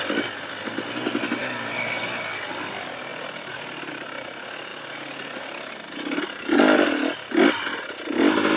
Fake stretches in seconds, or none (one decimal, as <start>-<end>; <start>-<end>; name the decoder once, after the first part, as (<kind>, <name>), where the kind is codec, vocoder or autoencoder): none